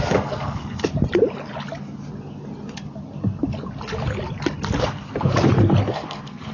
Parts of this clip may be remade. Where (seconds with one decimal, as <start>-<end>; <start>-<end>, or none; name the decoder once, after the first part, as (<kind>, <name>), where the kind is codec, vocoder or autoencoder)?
0.0-0.9 (codec, SNAC); 4.8-5.3; 5.9-6.5